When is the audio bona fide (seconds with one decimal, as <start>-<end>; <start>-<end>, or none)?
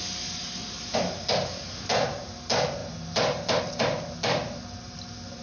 0.0-5.4